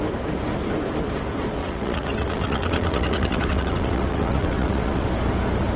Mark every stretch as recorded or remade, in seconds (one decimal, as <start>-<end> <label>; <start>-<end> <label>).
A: 0.0-1.6 recorded; 1.6-5.1 remade; 5.1-5.8 recorded